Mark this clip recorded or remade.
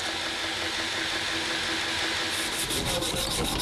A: recorded